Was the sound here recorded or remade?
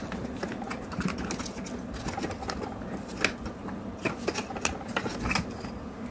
recorded